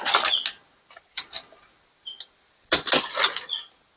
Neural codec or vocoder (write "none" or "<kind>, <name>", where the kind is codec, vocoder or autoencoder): none